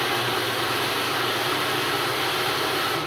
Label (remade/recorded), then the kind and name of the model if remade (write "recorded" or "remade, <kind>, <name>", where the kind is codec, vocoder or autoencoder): recorded